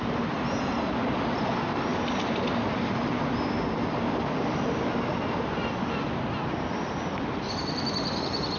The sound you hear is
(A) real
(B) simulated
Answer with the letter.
A